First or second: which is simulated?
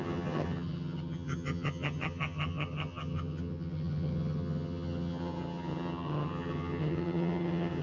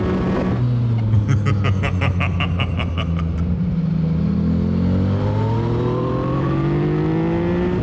first